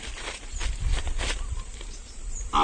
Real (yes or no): yes